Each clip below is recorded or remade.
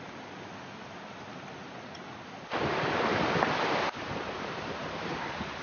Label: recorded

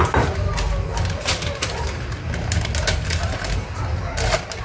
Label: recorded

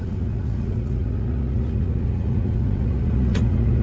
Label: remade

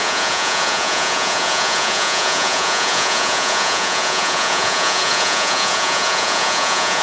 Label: remade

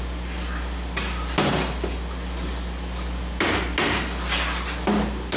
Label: recorded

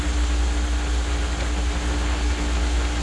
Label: recorded